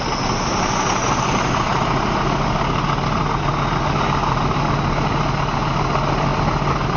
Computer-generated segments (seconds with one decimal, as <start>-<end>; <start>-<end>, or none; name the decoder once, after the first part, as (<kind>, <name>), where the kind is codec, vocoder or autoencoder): 6.3-7.0 (vocoder, BigVGAN v2)